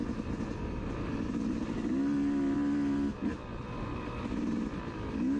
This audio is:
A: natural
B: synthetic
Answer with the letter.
A